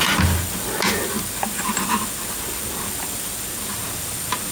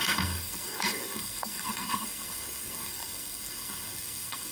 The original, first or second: first